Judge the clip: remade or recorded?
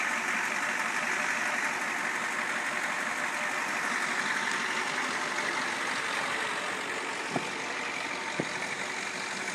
recorded